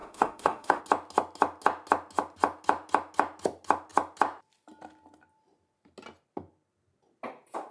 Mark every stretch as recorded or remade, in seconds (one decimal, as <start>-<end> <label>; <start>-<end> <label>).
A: 0.0-0.8 remade; 0.8-7.7 recorded

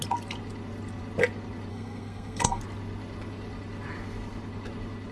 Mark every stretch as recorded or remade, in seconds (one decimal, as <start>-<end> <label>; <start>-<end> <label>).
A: 0.0-1.7 recorded; 1.7-2.6 remade; 2.6-5.1 recorded

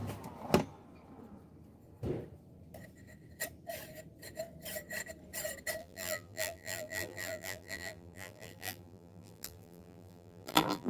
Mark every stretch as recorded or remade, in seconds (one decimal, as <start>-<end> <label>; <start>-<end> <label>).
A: 0.0-5.8 recorded; 5.8-10.9 remade